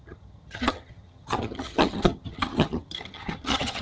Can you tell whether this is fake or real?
fake